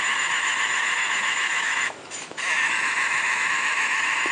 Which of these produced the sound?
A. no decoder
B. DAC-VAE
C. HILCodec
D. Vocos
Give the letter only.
B